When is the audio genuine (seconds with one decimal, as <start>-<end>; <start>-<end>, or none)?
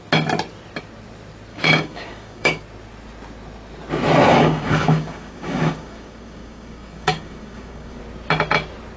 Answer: 0.0-1.5; 2.6-4.3; 8.0-9.0